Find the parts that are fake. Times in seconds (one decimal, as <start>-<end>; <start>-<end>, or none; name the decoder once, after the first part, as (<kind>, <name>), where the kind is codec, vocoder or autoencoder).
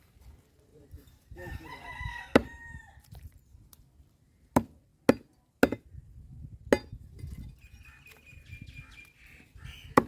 0.7-1.9 (vocoder, BigVGAN v2); 2.4-3.8